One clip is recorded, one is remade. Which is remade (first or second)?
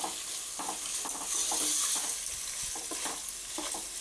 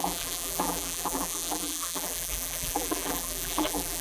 second